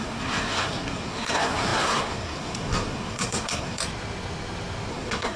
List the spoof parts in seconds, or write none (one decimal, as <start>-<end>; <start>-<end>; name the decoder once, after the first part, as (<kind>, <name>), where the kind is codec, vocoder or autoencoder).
0.0-3.8 (codec, SNAC); 4.9-5.4